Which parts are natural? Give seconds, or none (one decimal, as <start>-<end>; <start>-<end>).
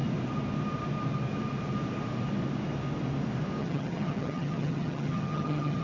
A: 0.0-3.6